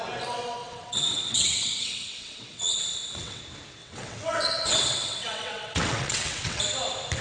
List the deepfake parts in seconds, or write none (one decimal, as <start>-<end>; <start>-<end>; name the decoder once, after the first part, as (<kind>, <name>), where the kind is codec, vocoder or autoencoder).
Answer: 0.6-3.4 (vocoder, WaveNeXt); 3.8-6.6